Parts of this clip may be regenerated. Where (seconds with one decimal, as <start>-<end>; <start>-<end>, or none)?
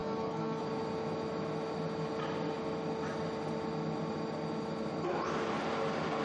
0.0-0.6